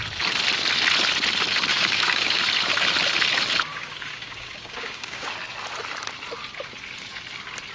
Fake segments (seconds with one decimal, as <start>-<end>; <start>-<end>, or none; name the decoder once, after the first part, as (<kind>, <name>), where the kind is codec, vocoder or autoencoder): 1.7-2.4 (codec, DAC); 3.7-5.3